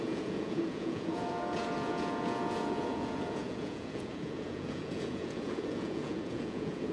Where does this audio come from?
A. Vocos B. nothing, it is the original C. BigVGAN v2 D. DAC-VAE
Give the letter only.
A